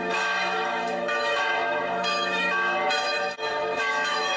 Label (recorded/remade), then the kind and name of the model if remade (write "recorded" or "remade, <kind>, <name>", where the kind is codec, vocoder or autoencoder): remade, autoencoder, DAC-VAE